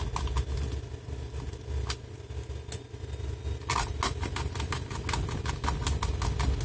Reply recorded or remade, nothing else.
recorded